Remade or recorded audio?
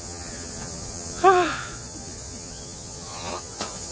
remade